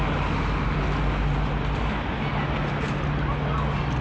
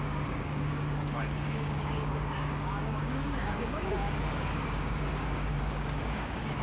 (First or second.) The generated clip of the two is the second